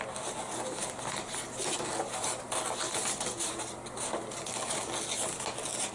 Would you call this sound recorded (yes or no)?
yes